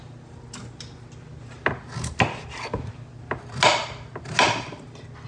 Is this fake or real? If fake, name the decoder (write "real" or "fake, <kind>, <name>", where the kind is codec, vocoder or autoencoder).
real